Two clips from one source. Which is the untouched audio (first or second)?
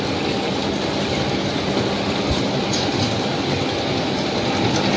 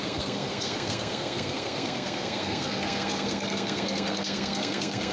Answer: first